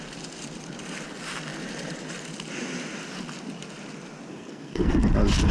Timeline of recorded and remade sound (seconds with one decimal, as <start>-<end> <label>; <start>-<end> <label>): 0.0-4.3 recorded; 4.3-5.0 remade; 5.0-5.5 recorded